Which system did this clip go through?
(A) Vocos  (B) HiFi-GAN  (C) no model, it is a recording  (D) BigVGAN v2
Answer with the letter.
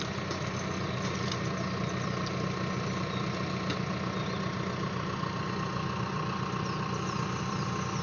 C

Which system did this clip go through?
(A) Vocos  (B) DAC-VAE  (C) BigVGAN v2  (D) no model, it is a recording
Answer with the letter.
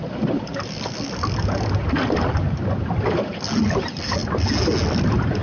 D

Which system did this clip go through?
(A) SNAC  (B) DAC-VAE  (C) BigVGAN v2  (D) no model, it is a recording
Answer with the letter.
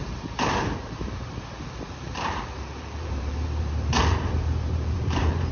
C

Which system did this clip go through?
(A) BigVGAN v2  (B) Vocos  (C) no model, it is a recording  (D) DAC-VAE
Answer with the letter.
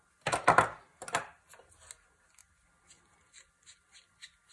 C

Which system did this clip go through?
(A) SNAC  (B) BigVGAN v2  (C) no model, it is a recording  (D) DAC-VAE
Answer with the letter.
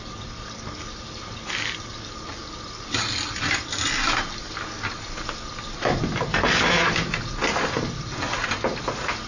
C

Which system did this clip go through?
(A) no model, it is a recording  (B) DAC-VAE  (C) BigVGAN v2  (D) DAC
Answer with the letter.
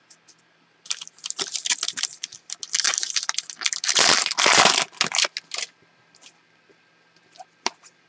A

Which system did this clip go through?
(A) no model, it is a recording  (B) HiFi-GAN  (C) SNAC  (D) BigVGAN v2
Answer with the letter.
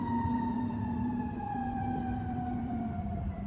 D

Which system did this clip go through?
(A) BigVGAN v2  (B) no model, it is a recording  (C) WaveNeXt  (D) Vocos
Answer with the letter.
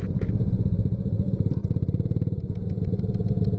A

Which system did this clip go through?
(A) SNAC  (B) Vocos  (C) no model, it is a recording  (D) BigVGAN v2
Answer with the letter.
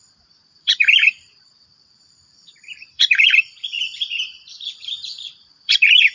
D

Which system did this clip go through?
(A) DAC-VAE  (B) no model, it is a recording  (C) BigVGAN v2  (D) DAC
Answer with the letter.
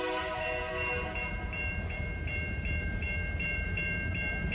C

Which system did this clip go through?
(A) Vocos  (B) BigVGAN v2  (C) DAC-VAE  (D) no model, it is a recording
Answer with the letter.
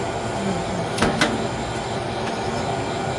D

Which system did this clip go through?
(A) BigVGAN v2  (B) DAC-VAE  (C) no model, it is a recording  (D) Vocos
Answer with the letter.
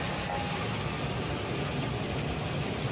C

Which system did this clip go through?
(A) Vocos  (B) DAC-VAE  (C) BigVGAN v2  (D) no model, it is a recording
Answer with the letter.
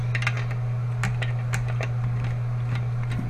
D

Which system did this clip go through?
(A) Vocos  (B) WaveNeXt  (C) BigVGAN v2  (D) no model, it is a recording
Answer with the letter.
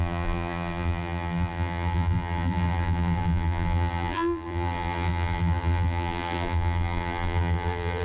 C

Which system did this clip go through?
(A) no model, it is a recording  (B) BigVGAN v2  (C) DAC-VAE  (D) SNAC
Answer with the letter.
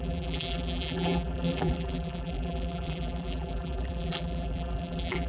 B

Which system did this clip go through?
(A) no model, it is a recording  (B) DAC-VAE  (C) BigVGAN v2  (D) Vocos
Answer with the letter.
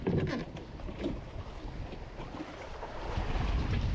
C